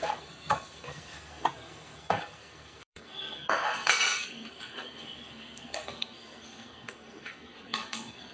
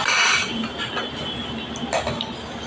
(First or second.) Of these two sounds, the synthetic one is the first